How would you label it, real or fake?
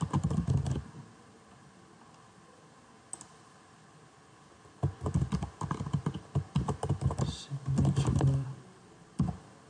real